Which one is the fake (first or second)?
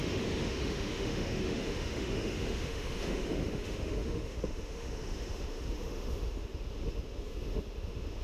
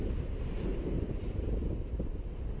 first